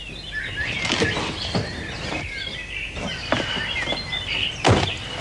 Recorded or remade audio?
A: recorded